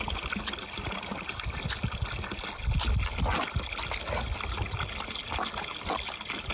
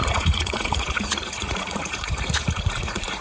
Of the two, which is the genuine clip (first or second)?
first